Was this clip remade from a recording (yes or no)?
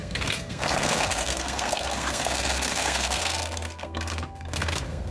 yes